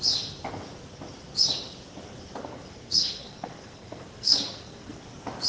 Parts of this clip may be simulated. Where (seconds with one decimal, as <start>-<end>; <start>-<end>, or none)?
2.4-5.0